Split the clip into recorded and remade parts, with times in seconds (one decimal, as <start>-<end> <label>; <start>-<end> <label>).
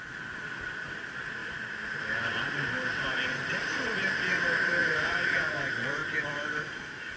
0.0-7.2 recorded